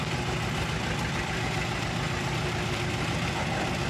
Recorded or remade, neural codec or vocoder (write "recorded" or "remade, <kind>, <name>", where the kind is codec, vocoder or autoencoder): recorded